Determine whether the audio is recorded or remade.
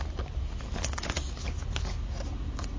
recorded